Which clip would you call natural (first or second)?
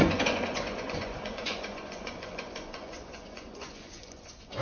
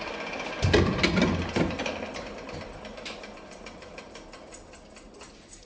second